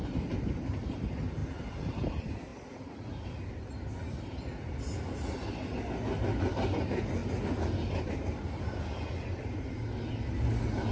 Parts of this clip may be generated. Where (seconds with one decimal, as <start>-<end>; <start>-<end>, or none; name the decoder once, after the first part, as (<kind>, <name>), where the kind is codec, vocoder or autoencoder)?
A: none

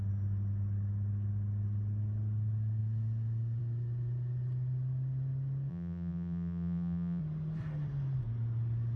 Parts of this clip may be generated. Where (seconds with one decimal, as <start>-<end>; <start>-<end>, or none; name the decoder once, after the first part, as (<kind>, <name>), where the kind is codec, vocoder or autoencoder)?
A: 5.7-7.2 (vocoder, BigVGAN v2)

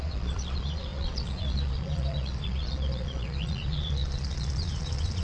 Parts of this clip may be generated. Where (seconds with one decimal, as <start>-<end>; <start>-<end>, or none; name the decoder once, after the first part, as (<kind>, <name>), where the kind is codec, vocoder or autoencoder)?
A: 0.0-5.2 (vocoder, Vocos)

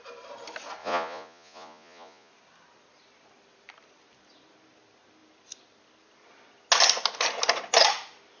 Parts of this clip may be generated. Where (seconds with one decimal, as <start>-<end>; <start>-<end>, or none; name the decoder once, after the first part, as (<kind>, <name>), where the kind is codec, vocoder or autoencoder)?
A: 0.8-2.3 (vocoder, Vocos)

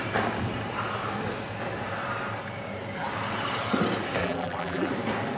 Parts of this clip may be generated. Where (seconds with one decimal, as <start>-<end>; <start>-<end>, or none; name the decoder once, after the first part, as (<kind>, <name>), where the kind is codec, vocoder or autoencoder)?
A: 4.2-4.9 (vocoder, BigVGAN v2)

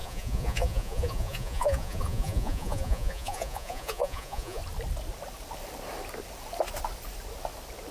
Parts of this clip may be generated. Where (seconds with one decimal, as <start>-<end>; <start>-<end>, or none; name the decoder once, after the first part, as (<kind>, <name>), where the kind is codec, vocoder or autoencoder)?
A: 0.0-4.6 (vocoder, Vocos)

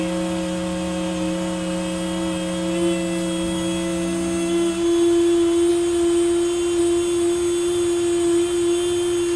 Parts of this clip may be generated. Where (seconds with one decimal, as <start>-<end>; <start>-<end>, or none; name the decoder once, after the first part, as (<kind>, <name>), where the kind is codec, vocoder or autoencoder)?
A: none

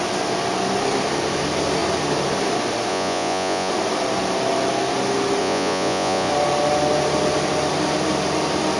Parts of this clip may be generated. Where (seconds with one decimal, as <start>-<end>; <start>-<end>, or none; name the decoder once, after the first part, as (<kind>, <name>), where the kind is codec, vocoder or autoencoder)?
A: 2.9-3.7 (vocoder, Vocos); 5.4-6.3